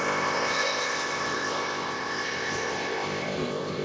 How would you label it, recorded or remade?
remade